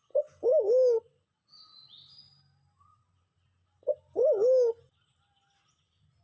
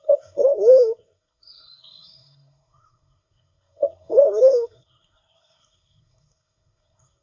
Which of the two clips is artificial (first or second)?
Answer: second